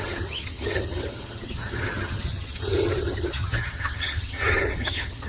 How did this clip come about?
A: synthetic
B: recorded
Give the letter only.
A